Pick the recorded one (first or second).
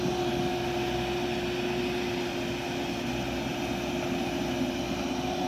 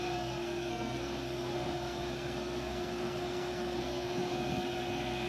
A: first